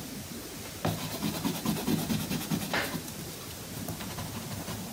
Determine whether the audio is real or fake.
real